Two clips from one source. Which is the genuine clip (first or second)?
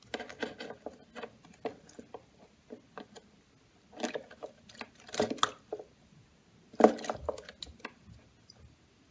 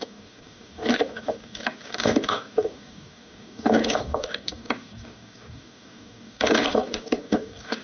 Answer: first